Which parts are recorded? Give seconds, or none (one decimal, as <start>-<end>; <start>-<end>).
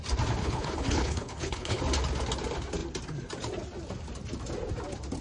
0.0-0.4; 1.8-5.2